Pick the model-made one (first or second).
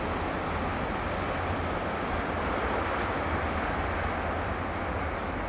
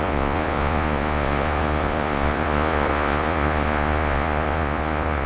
second